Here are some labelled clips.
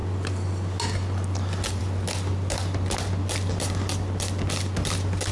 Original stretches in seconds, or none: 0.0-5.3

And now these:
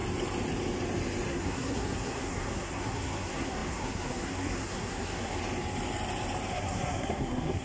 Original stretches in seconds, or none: 0.0-1.3; 5.4-6.5